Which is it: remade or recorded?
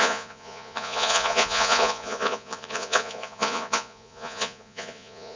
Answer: remade